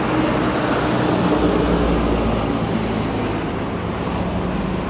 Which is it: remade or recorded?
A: recorded